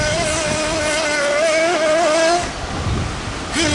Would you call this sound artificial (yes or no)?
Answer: no